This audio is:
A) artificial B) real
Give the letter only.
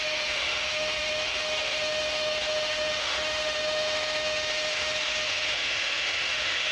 A